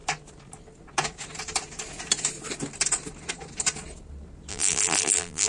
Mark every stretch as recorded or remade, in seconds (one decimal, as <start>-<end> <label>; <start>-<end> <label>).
0.0-4.5 recorded; 4.5-5.5 remade